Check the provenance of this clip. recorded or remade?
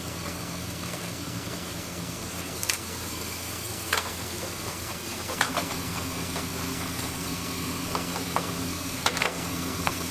remade